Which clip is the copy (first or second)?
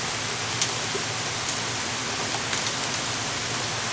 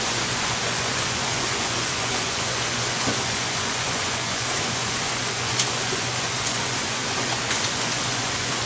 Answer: second